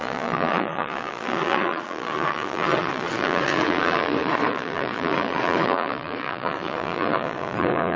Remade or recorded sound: remade